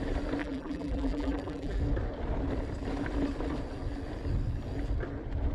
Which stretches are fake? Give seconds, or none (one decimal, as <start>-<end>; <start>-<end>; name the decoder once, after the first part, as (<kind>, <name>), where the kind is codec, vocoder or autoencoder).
0.4-1.8 (vocoder, BigVGAN v2)